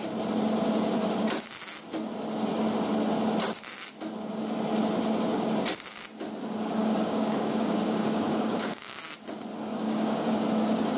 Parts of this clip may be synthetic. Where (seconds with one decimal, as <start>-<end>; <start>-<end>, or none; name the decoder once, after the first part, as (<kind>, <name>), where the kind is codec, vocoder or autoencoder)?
6.8-9.0 (codec, DAC); 9.7-10.3